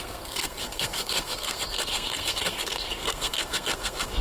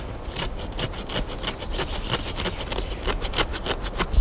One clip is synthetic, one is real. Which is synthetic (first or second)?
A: first